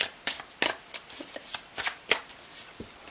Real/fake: real